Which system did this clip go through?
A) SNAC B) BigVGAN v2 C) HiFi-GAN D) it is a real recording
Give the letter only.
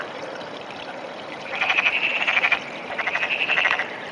B